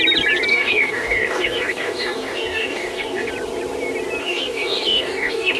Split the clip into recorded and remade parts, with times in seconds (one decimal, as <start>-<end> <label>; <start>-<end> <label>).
0.0-0.5 recorded; 0.5-3.3 remade; 3.3-4.2 recorded; 4.2-5.6 remade